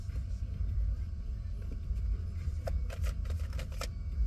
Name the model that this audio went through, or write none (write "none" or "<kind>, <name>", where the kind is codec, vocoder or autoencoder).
vocoder, BigVGAN v2